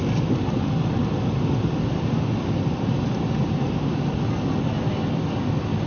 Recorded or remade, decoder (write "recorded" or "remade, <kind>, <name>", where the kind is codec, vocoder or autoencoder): recorded